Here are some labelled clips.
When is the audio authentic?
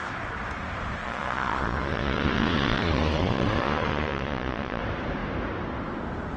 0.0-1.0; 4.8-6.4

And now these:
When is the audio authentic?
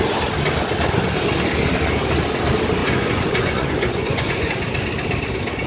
0.0-2.8; 4.5-5.7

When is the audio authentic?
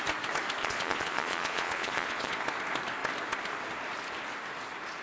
0.0-0.6; 2.3-5.0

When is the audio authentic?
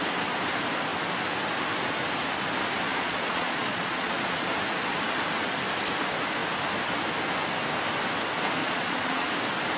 0.0-2.9; 4.5-8.6; 9.3-9.8